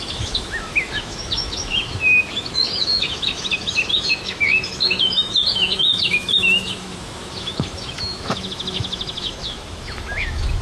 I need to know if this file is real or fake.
fake